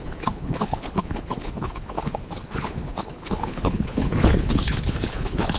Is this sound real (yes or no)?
no